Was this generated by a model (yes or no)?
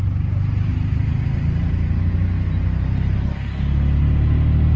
no